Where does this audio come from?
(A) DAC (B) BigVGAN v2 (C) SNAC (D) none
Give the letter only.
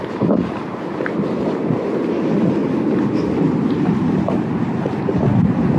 B